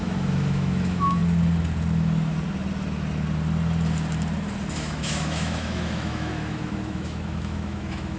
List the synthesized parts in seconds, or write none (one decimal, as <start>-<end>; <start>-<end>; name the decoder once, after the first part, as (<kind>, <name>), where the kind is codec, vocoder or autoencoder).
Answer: 0.0-1.2 (autoencoder, DAC-VAE); 4.7-8.2